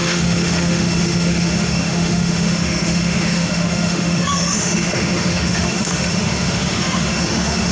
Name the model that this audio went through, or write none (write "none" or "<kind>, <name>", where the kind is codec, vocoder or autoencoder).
autoencoder, DAC-VAE